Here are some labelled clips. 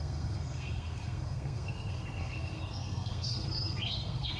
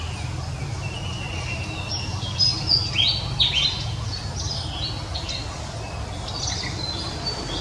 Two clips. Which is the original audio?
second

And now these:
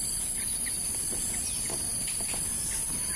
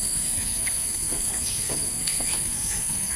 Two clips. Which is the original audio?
first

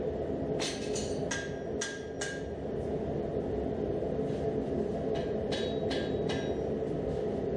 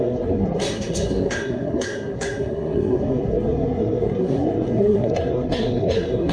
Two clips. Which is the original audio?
first